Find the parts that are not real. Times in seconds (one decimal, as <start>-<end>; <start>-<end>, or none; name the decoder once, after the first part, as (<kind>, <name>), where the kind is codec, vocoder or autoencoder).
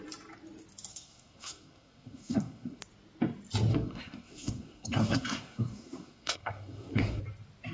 0.9-2.8 (codec, SNAC); 3.7-7.2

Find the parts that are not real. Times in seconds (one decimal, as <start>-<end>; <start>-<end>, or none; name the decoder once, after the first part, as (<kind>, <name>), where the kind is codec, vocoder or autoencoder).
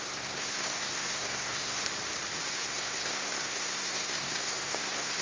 0.0-1.8 (codec, SNAC); 2.5-5.2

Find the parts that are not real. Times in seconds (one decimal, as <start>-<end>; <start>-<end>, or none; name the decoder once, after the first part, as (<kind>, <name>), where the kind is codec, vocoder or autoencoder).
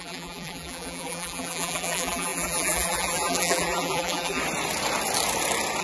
0.0-4.4 (vocoder, BigVGAN v2)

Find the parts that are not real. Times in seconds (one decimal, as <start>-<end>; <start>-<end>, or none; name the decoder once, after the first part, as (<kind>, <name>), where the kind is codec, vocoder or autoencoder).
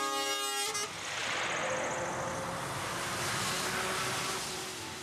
none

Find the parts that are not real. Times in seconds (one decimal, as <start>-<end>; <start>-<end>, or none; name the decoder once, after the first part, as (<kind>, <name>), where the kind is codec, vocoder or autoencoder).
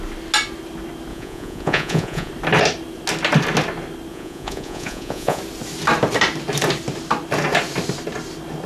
1.1-2.3 (vocoder, Vocos); 4.1-5.4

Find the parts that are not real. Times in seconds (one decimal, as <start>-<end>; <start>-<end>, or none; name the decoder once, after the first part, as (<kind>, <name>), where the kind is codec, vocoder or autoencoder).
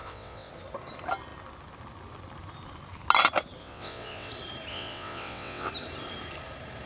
0.0-0.5 (vocoder, WaveNeXt); 3.6-4.3; 4.7-5.7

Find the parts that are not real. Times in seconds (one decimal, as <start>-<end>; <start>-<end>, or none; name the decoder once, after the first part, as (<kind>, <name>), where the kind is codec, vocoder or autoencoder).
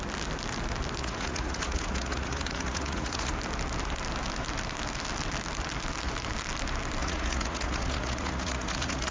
1.0-3.3 (vocoder, Vocos); 7.0-9.1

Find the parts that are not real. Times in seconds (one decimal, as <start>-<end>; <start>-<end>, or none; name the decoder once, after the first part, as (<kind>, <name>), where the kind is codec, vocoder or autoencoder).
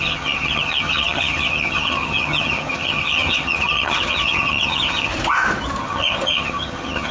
0.0-5.1 (vocoder, HiFi-GAN); 5.8-7.1